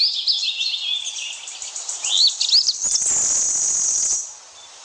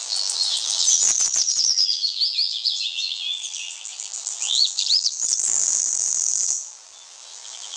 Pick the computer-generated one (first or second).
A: second